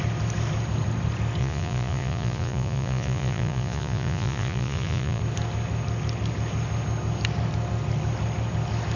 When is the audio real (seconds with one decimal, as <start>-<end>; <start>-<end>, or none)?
0.0-1.4; 5.2-9.0